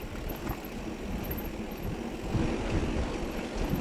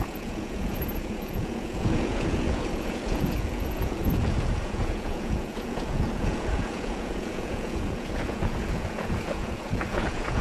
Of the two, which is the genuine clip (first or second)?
first